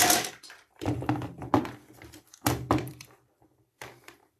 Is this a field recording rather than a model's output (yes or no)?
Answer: no